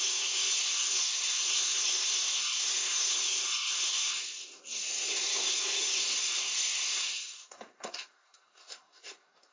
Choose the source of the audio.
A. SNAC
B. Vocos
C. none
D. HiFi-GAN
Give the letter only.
A